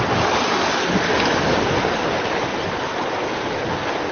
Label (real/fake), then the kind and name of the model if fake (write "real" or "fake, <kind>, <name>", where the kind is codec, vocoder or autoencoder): real